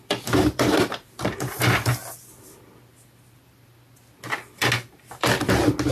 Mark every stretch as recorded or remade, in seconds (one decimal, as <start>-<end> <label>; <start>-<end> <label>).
0.0-1.6 remade; 1.6-5.9 recorded